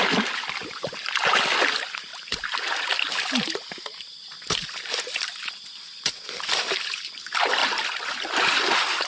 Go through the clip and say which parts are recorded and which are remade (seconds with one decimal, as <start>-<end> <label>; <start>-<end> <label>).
0.0-9.1 recorded